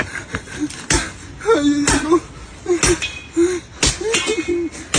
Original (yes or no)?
yes